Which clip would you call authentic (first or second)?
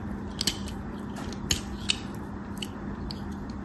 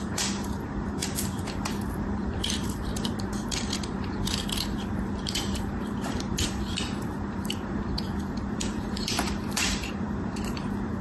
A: first